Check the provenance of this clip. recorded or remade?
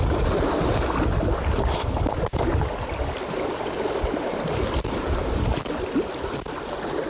recorded